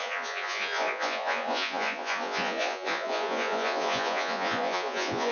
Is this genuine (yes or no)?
no